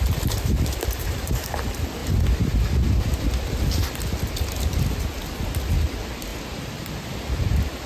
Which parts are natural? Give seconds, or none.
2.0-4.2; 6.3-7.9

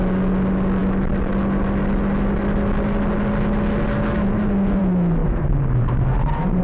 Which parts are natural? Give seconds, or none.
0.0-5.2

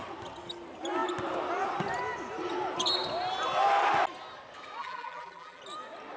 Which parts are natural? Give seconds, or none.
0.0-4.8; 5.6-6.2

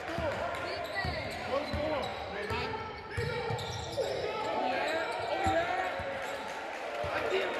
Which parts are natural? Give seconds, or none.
none

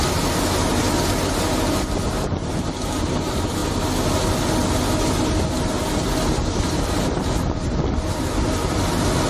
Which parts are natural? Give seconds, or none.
0.0-9.3

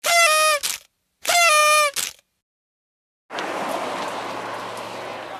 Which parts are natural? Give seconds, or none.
0.0-5.4